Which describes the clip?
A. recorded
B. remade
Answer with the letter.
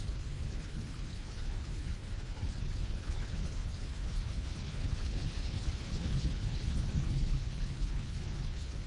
B